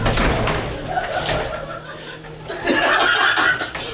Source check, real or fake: real